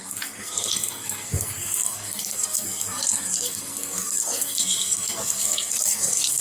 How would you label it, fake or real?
fake